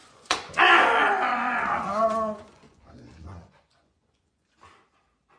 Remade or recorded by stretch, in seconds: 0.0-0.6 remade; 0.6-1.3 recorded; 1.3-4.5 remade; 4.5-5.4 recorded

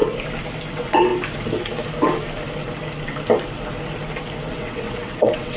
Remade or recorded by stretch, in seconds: 0.0-0.7 recorded; 0.7-1.1 remade; 1.1-4.5 recorded; 4.5-5.6 remade

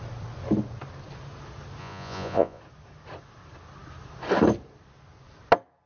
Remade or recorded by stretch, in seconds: 0.0-1.8 recorded; 1.8-2.6 remade; 2.6-5.9 recorded

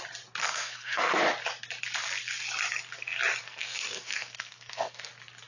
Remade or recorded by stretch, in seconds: 0.0-0.4 recorded; 0.4-1.2 remade; 1.2-3.4 recorded; 3.4-5.1 remade; 5.1-5.5 recorded

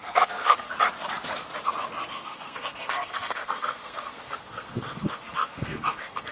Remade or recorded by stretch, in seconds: 0.0-0.7 remade; 0.7-2.1 recorded; 2.1-6.3 remade

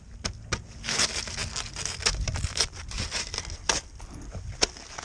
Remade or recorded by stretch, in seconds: 0.0-5.0 recorded